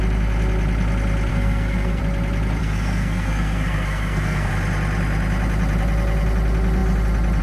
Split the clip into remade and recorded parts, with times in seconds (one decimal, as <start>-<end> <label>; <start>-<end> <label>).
0.0-1.3 recorded; 1.3-2.0 remade; 2.0-2.6 recorded; 2.6-4.5 remade; 4.5-7.4 recorded